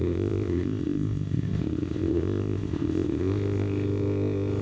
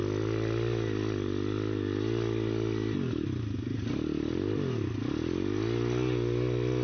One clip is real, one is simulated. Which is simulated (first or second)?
first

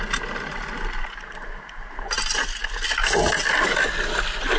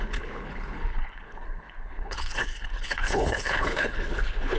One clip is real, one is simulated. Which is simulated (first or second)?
second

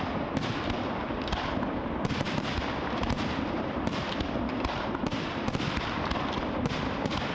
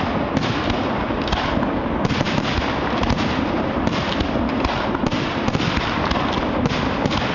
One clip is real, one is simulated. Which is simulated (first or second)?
first